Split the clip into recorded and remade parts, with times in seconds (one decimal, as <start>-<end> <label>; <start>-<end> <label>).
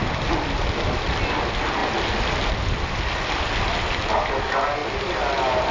0.0-5.7 recorded